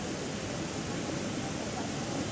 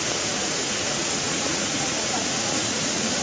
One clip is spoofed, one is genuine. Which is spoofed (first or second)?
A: second